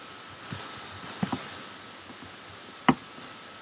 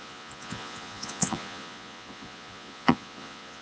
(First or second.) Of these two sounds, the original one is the first